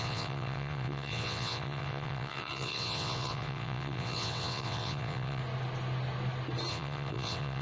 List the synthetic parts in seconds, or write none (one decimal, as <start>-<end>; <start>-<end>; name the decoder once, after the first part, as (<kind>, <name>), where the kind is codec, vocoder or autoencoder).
0.0-5.4 (vocoder, WaveNeXt); 6.7-7.6